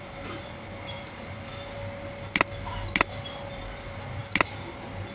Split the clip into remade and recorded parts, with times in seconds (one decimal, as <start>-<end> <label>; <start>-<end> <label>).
0.0-1.5 remade; 1.5-3.5 recorded; 3.5-4.2 remade; 4.2-5.1 recorded